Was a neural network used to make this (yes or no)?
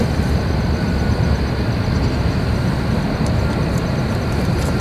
no